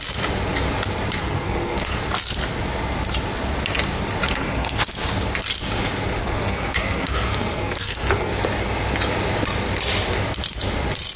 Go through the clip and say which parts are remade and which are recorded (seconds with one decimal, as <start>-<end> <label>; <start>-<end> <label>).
0.0-1.2 recorded; 1.2-2.0 remade; 2.0-4.3 recorded; 4.3-4.8 remade; 4.8-6.2 recorded; 6.2-8.3 remade; 8.3-11.2 recorded